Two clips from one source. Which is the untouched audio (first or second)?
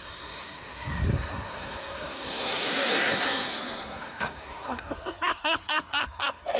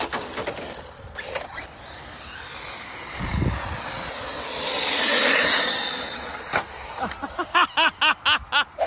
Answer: second